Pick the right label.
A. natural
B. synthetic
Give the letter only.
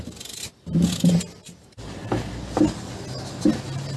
A